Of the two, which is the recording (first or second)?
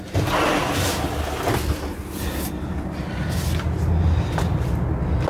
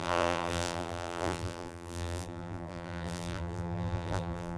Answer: first